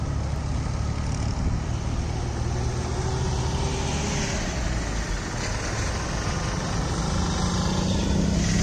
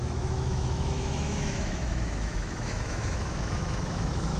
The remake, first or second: second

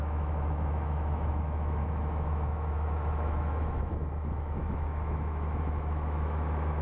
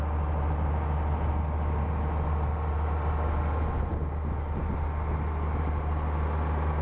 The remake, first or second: first